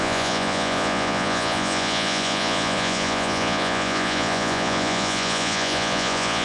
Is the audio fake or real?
fake